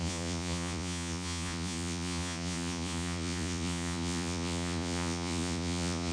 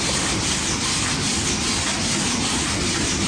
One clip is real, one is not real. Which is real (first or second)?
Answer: second